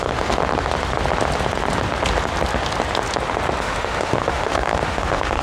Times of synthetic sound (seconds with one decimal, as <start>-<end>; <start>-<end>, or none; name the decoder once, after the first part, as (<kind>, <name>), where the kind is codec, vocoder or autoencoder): 0.0-0.4 (autoencoder, DAC-VAE); 3.6-5.4